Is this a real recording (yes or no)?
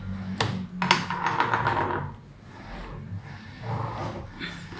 yes